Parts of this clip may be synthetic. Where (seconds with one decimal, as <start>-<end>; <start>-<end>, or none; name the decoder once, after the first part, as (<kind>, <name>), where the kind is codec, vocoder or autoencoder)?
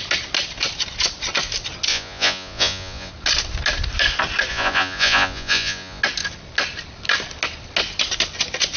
1.9-3.1 (vocoder, Vocos); 4.5-6.0